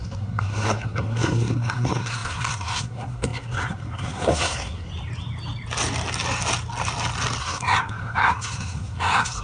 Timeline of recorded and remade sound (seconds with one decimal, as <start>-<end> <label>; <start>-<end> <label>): 0.0-4.9 remade; 4.9-7.4 recorded; 7.4-9.4 remade

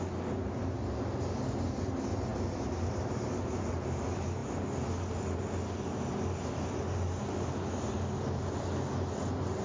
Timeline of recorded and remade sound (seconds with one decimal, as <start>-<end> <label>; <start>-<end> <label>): 0.0-9.6 recorded

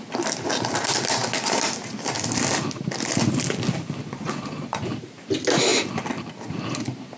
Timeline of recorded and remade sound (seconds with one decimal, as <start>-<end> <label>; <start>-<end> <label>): 0.0-4.1 recorded; 4.1-4.8 remade; 4.8-7.2 recorded

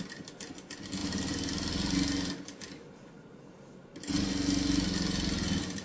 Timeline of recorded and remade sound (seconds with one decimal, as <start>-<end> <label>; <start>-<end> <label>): 0.0-5.8 recorded

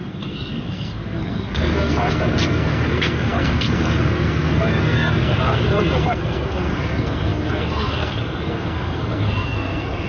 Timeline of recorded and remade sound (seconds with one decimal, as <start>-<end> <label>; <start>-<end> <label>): 0.0-10.1 remade

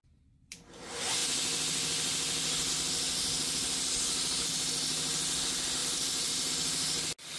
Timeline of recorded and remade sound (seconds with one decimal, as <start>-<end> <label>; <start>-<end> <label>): 0.0-5.8 recorded; 5.8-6.5 remade; 6.5-7.4 recorded

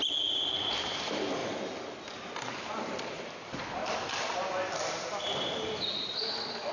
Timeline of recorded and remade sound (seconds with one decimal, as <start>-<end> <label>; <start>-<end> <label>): 0.0-6.7 recorded

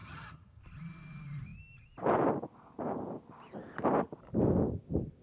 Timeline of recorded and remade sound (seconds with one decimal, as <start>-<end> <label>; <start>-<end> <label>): 0.0-0.6 remade; 0.6-5.2 recorded